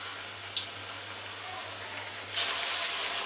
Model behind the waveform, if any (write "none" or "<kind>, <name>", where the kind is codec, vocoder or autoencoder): none